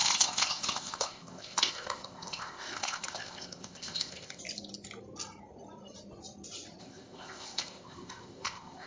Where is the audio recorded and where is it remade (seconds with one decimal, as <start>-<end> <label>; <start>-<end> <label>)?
0.0-4.4 remade; 4.4-6.8 recorded; 6.8-8.9 remade